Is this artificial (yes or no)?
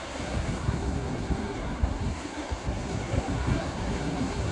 yes